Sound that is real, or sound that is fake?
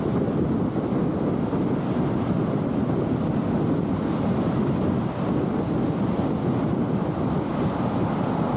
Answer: real